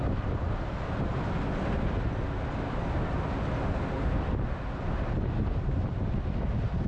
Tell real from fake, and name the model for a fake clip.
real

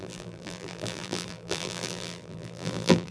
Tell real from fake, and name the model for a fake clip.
fake, vocoder, BigVGAN v2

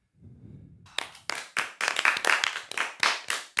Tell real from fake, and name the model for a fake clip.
real